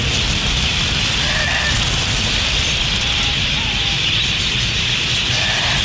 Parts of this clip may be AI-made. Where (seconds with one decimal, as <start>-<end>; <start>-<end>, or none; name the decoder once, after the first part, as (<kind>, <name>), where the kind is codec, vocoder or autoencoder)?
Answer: 0.7-4.2 (vocoder, BigVGAN v2)